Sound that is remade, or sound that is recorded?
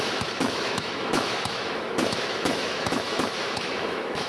remade